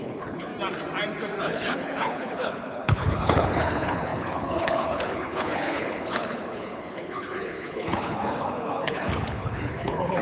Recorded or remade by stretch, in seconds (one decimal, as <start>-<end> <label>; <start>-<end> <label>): 0.0-0.5 remade; 0.5-1.4 recorded; 1.4-10.2 remade